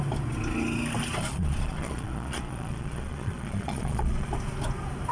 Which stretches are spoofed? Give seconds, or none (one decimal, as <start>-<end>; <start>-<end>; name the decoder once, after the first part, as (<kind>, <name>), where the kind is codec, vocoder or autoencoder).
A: 1.2-4.3 (vocoder, Vocos)